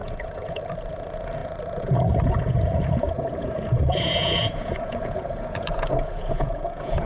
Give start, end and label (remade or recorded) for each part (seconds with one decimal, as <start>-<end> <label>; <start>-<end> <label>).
0.0-7.1 remade